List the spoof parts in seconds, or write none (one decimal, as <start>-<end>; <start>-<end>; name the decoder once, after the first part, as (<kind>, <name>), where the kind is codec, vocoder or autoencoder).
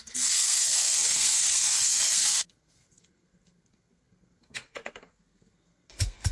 0.0-6.3 (codec, SNAC)